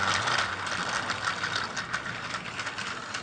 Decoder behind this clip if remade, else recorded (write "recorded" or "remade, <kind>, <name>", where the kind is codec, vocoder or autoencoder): recorded